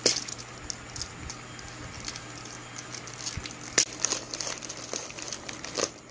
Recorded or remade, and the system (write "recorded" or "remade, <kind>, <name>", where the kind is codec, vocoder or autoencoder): recorded